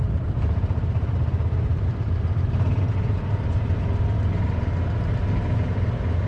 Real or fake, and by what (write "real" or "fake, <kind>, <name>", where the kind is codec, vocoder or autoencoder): fake, vocoder, BigVGAN v2